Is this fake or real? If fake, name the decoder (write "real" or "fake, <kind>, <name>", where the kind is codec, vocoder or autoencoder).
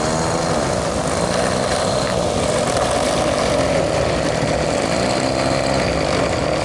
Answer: real